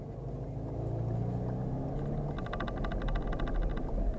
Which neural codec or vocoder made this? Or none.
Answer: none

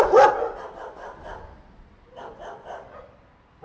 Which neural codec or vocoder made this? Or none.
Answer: none